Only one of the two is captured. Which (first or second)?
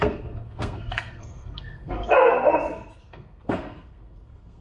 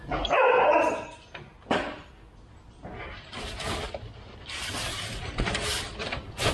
second